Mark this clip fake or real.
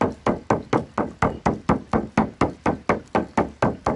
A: real